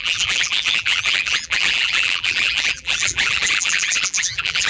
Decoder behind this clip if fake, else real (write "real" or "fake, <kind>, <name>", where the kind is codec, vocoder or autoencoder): fake, vocoder, BigVGAN v2